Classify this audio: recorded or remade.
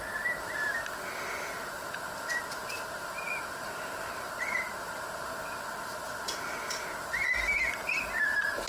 recorded